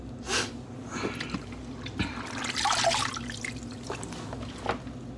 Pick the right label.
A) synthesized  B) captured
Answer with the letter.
B